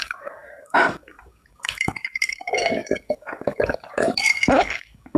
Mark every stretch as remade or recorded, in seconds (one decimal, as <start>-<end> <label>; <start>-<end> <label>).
0.0-5.2 remade